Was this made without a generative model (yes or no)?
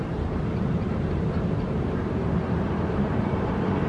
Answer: no